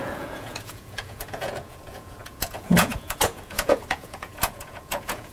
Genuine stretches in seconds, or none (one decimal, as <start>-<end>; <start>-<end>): none

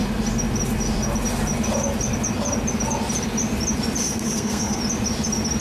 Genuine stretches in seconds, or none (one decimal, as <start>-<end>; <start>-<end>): 0.0-4.0; 4.8-5.6

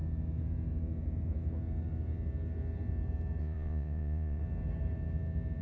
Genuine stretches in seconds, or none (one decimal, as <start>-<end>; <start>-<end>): 0.0-3.4; 4.4-5.6

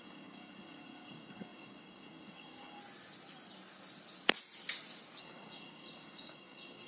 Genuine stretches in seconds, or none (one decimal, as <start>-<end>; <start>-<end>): 2.8-5.2

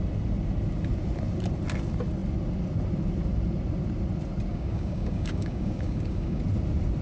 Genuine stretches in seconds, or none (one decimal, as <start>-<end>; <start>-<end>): 0.0-4.5; 6.4-7.0

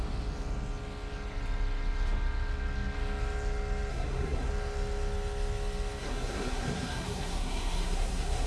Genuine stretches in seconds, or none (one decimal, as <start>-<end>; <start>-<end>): 0.0-3.9; 4.5-6.0